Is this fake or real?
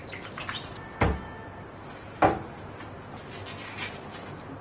real